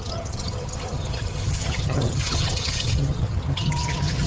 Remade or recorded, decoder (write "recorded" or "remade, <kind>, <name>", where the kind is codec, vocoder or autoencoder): remade, vocoder, HiFi-GAN